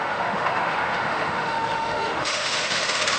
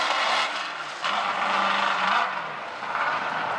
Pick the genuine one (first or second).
second